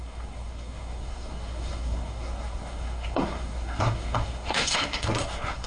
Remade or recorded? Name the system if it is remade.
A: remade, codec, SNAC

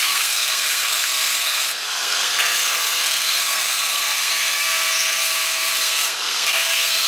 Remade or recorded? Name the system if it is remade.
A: remade, codec, SNAC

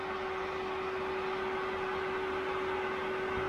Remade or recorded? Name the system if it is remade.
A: recorded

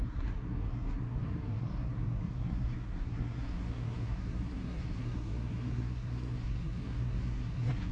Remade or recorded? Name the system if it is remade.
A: remade, codec, SNAC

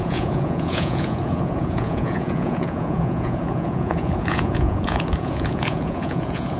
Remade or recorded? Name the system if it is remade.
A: remade, vocoder, Vocos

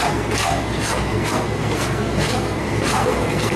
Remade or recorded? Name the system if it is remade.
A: remade, codec, SNAC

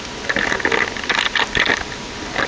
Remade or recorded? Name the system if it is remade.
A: recorded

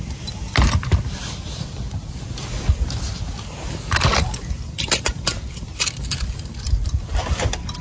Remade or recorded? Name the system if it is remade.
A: recorded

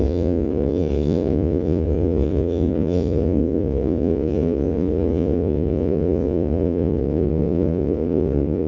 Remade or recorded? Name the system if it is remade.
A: remade, vocoder, Vocos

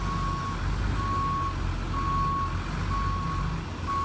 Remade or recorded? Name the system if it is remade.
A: recorded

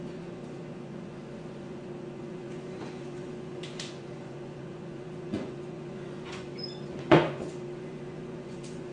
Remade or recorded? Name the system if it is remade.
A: remade, vocoder, Vocos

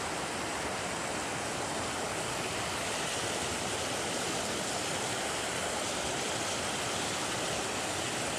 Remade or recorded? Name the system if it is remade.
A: recorded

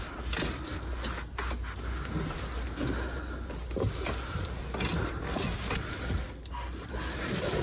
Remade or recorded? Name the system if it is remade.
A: recorded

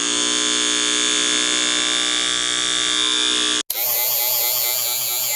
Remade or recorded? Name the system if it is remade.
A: recorded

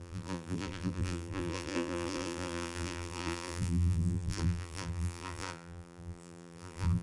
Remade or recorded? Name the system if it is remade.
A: remade, vocoder, BigVGAN v2